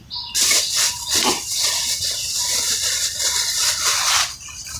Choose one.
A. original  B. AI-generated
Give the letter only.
A